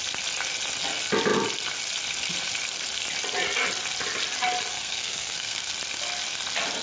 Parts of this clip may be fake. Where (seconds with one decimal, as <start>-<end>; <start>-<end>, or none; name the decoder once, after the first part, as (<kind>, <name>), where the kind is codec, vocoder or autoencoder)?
4.7-5.7 (codec, SNAC)